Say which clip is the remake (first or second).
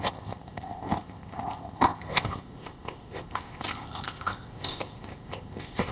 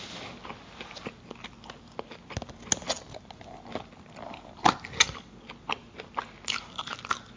first